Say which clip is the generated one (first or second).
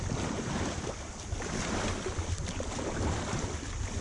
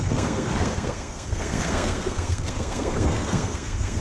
second